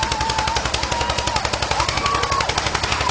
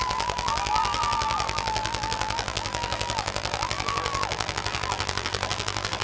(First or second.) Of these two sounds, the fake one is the second